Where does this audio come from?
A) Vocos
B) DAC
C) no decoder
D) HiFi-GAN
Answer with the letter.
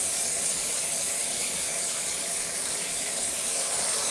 B